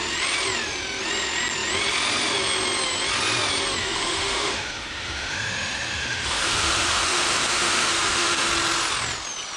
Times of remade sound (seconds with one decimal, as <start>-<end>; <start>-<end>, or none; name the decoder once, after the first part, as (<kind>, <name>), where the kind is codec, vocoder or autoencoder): 3.8-8.5 (autoencoder, DAC-VAE)